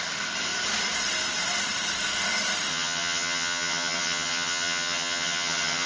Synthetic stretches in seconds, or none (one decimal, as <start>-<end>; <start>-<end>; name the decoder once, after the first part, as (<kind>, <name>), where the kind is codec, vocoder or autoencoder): 2.7-5.9 (vocoder, HiFi-GAN)